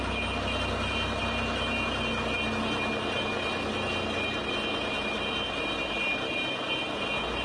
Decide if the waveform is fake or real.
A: real